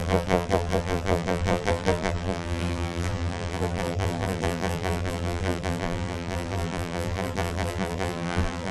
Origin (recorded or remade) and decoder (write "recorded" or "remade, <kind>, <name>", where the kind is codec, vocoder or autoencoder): remade, vocoder, BigVGAN v2